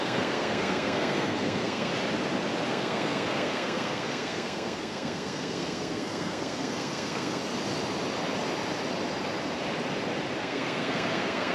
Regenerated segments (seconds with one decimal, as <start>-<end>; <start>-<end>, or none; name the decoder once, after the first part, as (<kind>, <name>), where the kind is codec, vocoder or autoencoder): 0.0-1.9 (codec, SNAC); 2.7-7.4; 10.4-11.5